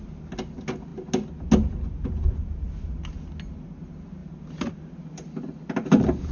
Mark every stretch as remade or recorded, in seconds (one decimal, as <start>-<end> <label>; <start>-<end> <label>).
0.0-6.3 recorded